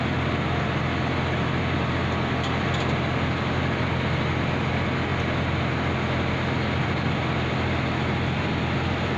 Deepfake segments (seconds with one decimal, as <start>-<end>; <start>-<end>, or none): none